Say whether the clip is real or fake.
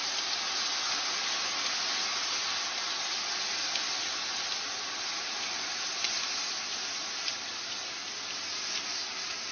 real